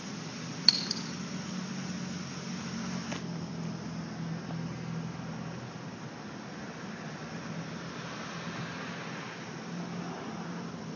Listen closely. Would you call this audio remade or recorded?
recorded